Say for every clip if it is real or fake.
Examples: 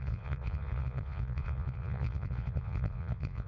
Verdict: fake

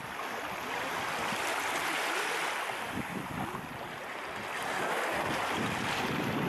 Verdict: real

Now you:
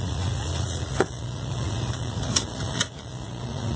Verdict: fake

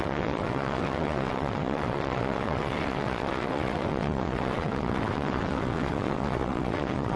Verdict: fake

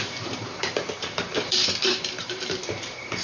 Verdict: fake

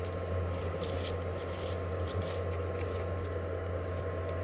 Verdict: real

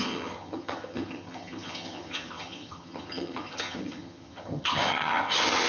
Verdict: fake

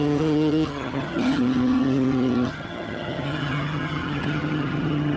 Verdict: fake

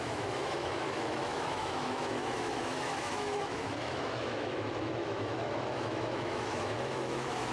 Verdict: fake